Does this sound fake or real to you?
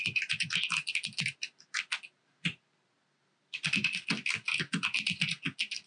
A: real